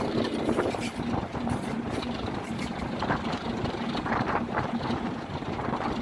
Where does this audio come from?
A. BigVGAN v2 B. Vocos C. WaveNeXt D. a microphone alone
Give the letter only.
A